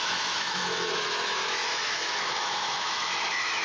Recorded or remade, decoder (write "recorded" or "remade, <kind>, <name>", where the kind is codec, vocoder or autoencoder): remade, autoencoder, DAC-VAE